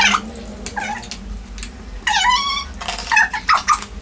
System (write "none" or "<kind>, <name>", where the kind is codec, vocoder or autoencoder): none